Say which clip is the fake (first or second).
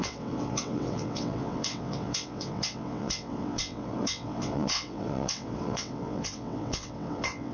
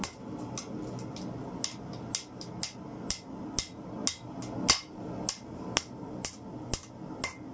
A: first